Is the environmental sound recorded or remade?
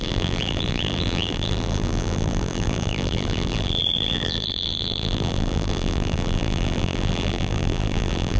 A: remade